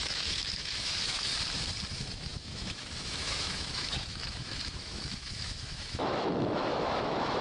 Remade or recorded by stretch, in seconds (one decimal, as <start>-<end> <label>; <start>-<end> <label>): 0.0-1.3 remade; 1.3-1.9 recorded; 1.9-7.4 remade